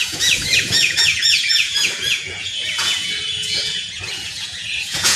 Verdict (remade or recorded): remade